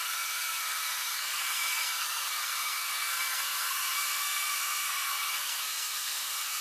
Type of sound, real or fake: fake